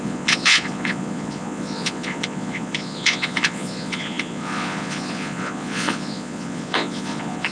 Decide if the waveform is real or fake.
fake